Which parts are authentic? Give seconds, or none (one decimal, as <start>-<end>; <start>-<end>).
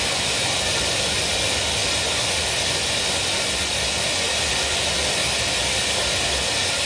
5.2-6.9